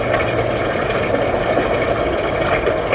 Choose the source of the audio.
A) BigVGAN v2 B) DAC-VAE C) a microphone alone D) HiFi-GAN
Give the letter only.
C